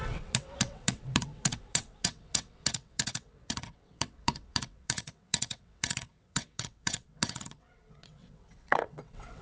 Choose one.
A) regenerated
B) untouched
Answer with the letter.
A